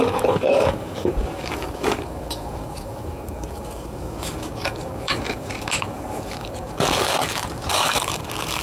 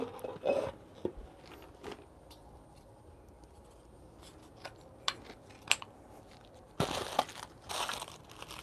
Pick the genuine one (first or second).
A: second